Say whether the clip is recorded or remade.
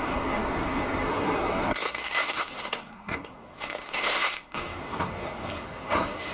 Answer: remade